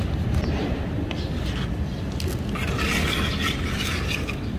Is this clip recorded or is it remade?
recorded